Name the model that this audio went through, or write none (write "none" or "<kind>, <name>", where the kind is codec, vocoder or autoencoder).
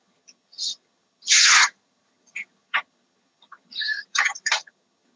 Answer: vocoder, HiFi-GAN